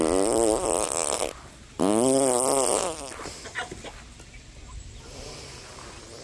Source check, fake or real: real